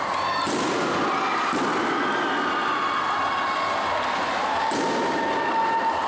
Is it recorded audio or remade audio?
recorded